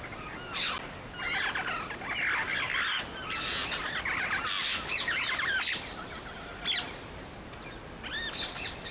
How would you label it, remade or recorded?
recorded